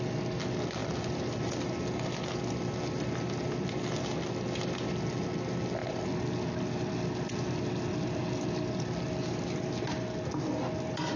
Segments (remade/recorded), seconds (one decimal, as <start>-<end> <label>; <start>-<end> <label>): 0.0-11.2 recorded